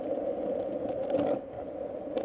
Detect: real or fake real